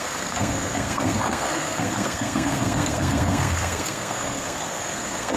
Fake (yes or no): yes